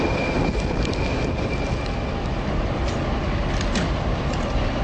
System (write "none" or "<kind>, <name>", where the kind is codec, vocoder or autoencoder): none